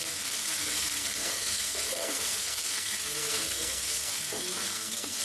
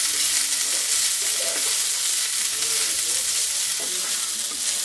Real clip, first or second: second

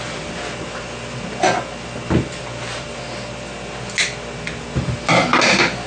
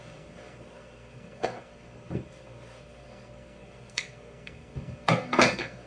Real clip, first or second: first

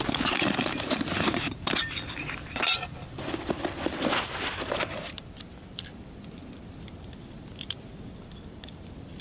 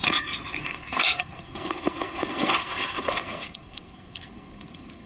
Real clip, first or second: first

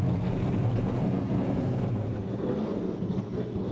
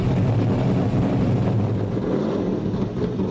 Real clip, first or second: second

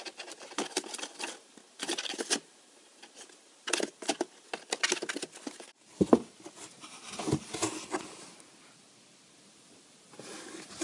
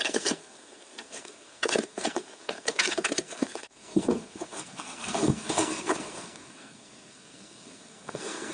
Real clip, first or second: first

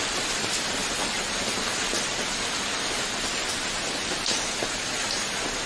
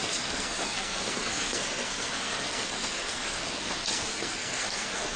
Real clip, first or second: first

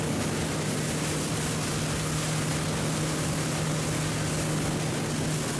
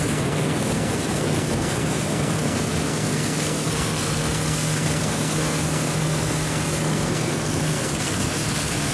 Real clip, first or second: first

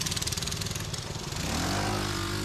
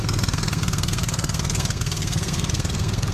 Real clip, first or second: first